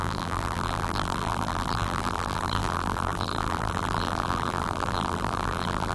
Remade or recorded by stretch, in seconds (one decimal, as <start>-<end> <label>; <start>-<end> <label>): 0.0-5.9 remade